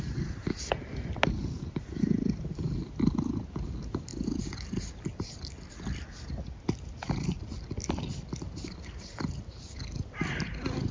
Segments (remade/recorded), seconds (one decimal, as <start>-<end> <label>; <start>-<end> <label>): 0.0-10.9 recorded